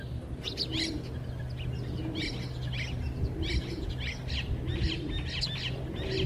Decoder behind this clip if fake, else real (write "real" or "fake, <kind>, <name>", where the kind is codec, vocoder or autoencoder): real